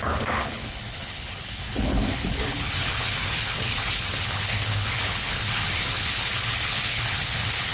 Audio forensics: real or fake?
fake